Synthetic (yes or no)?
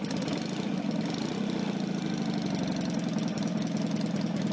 no